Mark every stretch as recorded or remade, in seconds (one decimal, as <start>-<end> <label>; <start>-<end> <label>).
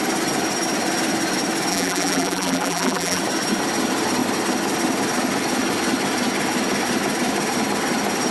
0.0-1.7 recorded; 1.7-3.2 remade; 3.2-8.3 recorded